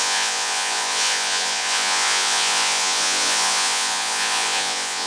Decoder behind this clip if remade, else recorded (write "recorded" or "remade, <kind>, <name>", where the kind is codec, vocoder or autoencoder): remade, vocoder, Vocos